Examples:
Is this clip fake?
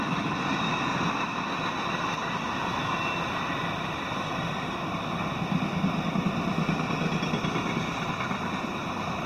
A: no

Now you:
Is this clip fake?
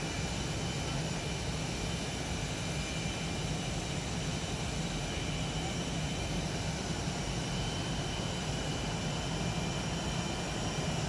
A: no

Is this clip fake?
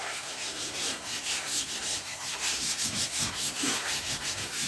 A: yes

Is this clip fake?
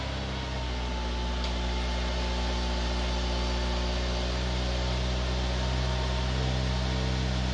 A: no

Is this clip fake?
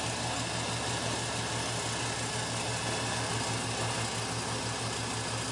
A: no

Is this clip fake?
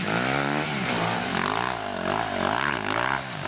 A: no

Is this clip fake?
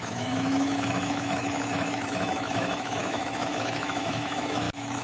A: yes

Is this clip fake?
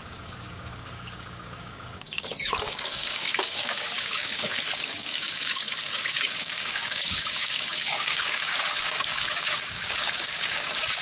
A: yes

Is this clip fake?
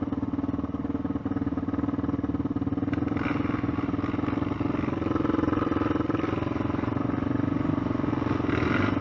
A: no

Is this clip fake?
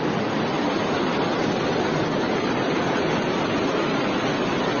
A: no